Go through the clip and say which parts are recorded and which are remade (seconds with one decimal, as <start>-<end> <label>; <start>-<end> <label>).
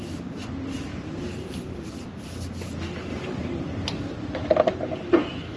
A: 0.0-0.9 recorded; 0.9-1.9 remade; 1.9-3.1 recorded; 3.1-4.5 remade; 4.5-5.6 recorded